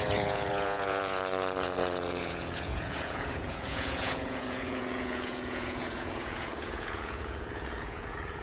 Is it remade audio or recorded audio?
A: remade